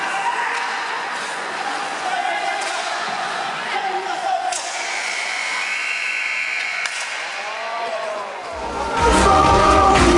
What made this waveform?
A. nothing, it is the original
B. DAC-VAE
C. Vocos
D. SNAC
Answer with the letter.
C